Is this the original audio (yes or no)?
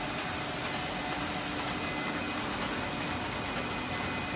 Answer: yes